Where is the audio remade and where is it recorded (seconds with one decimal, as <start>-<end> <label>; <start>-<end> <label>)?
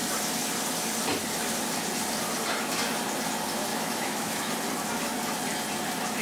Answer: 0.0-3.7 recorded; 3.7-4.5 remade; 4.5-6.2 recorded